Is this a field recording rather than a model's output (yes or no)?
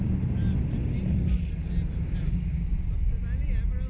yes